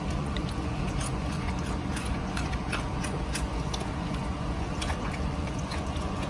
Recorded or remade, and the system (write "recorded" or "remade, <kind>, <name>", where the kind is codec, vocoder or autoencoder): remade, vocoder, Vocos